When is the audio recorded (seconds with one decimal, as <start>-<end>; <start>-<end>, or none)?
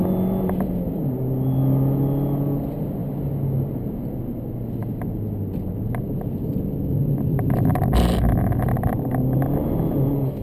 0.0-10.4